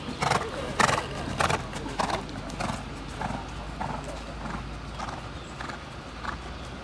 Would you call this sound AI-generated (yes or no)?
no